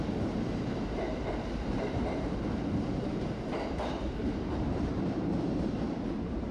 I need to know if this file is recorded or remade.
remade